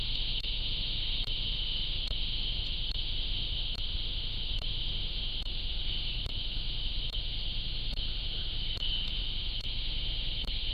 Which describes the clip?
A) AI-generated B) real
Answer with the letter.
A